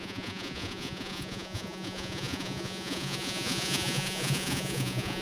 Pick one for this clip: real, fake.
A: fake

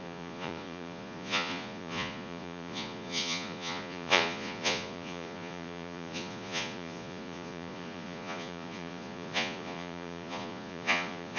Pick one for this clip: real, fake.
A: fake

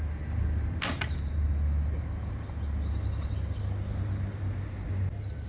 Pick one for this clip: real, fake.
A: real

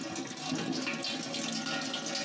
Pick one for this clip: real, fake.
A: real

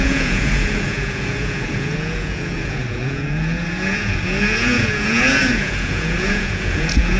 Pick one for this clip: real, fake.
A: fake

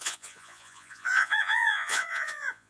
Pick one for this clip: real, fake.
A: fake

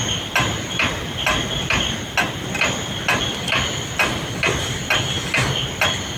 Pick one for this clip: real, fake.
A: real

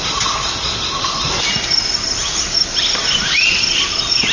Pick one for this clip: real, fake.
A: real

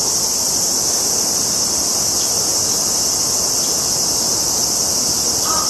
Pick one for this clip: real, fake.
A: real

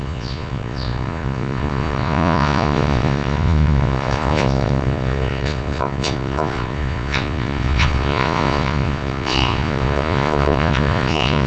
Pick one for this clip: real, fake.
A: fake